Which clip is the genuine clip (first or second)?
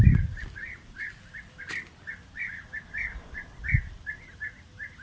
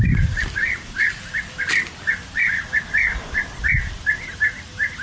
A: first